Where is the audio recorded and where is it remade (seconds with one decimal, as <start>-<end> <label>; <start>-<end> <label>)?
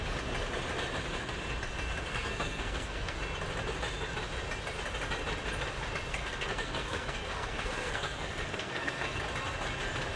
0.0-2.1 recorded; 2.1-3.2 remade; 3.2-6.1 recorded; 6.1-9.2 remade; 9.2-10.2 recorded